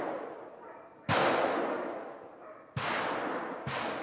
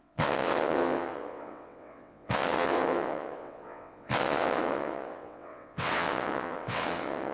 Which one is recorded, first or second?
first